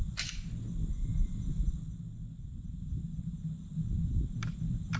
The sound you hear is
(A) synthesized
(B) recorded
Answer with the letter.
B